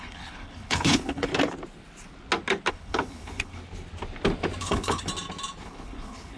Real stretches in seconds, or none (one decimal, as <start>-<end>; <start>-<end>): 1.3-2.7; 3.6-4.6; 5.1-5.6